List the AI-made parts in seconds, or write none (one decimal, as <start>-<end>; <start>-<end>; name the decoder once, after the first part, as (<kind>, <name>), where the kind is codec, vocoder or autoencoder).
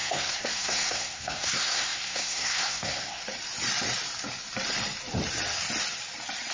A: 0.0-3.2 (codec, SNAC)